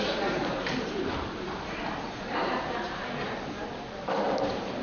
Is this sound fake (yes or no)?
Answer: yes